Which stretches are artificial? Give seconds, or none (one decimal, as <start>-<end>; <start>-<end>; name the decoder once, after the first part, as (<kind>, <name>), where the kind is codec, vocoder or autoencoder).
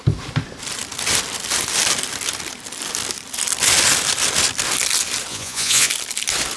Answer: 5.3-5.9 (vocoder, Vocos)